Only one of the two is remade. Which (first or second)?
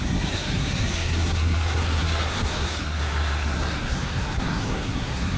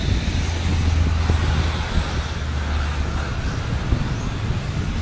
first